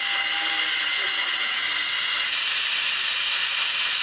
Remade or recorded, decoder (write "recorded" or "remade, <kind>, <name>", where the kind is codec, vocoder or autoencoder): recorded